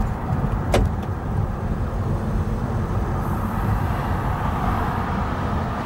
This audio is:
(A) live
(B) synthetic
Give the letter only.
B